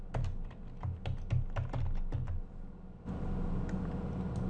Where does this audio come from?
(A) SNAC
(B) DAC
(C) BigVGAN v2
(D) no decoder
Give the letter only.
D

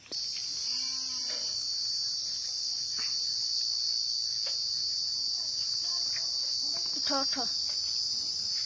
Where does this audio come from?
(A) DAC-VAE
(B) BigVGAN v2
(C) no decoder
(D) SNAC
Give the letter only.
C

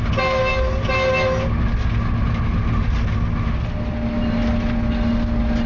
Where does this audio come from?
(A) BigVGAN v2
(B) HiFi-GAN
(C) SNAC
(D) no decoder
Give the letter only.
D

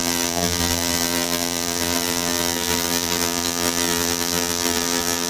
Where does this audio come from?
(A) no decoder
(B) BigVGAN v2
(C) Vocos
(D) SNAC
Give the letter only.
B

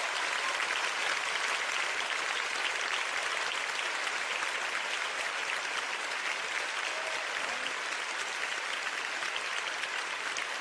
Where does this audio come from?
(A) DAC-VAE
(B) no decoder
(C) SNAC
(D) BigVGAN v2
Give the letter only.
B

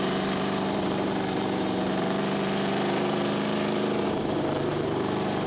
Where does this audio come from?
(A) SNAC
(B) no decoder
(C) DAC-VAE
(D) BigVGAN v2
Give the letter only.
D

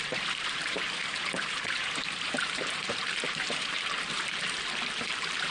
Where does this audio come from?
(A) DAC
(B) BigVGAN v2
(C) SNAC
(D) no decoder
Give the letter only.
B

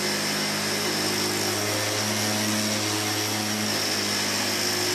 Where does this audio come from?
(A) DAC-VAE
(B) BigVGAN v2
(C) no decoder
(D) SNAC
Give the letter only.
C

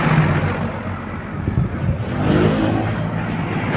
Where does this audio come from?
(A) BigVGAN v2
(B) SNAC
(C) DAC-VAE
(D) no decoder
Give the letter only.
D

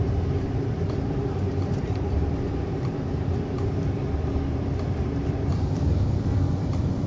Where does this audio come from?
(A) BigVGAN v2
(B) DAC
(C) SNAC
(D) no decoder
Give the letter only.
A